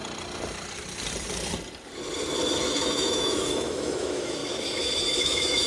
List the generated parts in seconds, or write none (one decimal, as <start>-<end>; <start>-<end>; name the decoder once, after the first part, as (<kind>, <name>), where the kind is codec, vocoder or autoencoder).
2.6-4.4 (autoencoder, DAC-VAE); 5.2-5.7